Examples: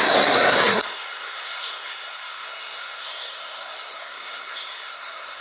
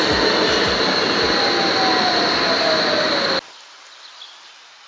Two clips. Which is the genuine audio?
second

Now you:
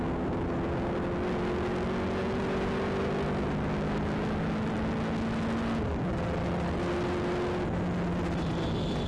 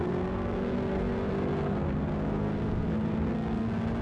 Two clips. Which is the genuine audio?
first